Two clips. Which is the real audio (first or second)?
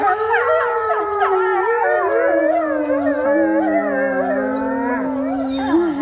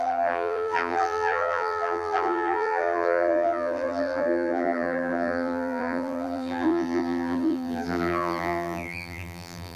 first